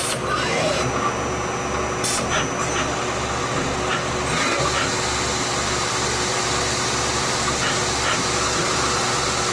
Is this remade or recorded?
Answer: recorded